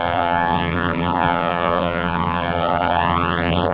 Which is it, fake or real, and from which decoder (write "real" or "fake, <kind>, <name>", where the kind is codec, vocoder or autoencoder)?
fake, vocoder, BigVGAN v2